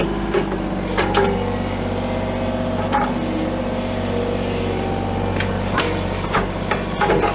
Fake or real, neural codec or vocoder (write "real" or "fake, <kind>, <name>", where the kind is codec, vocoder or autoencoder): real